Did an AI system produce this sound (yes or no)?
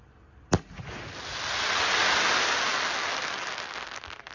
no